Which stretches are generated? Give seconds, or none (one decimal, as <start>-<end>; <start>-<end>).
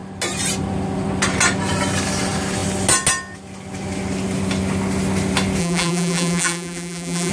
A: 5.6-7.3